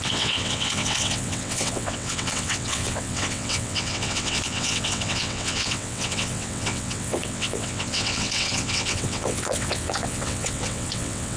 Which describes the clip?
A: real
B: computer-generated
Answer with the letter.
B